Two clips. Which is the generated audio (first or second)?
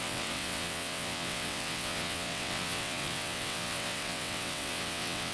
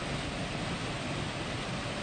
first